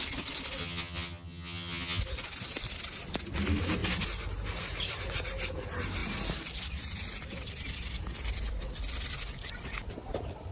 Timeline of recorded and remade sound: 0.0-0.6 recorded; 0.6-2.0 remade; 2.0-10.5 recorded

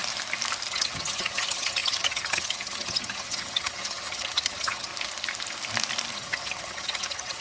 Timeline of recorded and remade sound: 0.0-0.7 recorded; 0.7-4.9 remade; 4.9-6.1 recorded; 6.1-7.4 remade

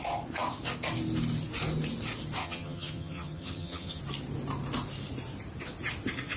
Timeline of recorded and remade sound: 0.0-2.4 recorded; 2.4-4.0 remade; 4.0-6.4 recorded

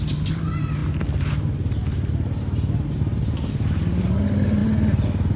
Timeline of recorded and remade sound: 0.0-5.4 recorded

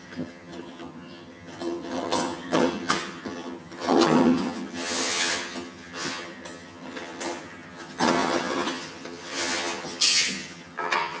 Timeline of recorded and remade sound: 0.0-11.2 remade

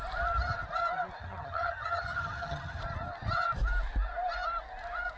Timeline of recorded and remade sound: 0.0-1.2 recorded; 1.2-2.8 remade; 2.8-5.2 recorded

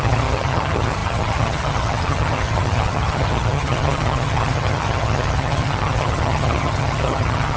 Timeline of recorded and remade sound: 0.0-7.6 remade

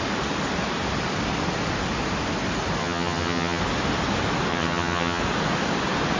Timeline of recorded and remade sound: 0.0-2.8 recorded; 2.8-3.6 remade; 3.6-4.5 recorded; 4.5-5.2 remade; 5.2-6.2 recorded